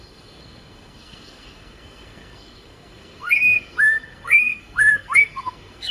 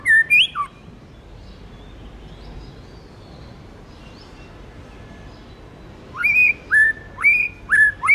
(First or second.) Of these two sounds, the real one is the second